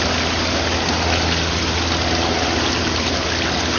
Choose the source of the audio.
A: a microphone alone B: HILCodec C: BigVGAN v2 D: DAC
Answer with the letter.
A